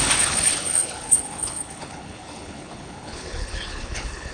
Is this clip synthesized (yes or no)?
yes